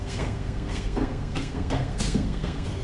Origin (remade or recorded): remade